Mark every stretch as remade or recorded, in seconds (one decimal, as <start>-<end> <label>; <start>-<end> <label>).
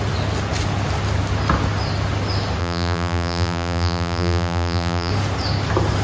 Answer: 0.0-2.6 recorded; 2.6-5.1 remade; 5.1-6.0 recorded